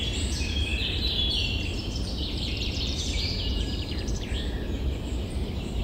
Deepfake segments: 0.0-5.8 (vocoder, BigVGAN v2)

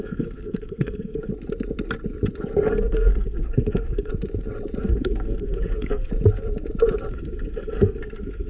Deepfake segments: 0.0-1.3 (codec, SNAC); 2.7-4.1; 4.8-6.1; 7.1-8.5

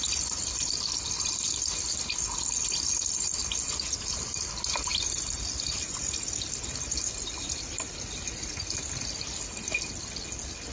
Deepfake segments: none

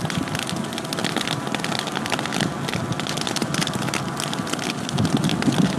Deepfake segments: none

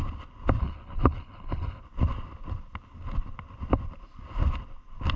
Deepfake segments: 0.6-1.8 (codec, HILCodec)

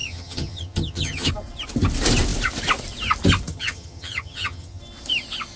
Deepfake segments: 0.0-1.3 (vocoder, HiFi-GAN); 3.5-4.8